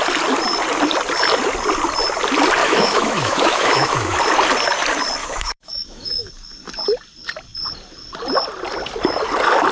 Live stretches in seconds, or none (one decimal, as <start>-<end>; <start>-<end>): 0.0-2.6; 4.2-5.2; 6.3-9.7